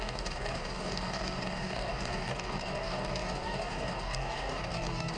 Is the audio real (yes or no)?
no